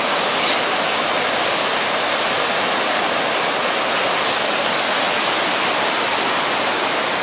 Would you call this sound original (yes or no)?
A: yes